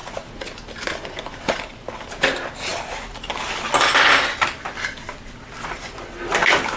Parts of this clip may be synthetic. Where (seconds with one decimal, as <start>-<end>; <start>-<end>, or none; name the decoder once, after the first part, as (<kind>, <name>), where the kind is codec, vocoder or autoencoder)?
none